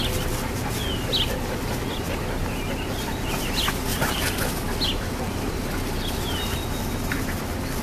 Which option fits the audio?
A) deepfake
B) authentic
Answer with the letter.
B